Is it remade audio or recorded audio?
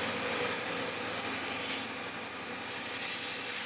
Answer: recorded